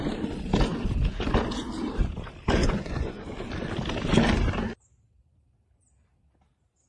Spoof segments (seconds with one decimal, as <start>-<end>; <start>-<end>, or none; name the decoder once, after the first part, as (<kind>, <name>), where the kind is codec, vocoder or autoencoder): 2.6-3.2 (vocoder, Vocos)